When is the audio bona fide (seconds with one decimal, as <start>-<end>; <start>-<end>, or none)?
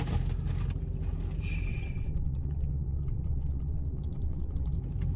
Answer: 0.0-1.7; 4.8-5.2